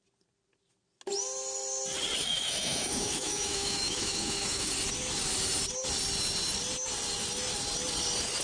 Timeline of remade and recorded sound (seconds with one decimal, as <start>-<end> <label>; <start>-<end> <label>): 0.0-2.2 recorded; 2.2-4.7 remade; 4.7-8.4 recorded